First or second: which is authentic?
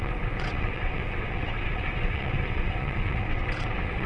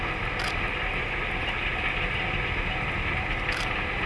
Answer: second